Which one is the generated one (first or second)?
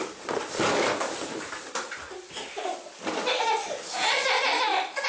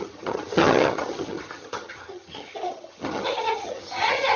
second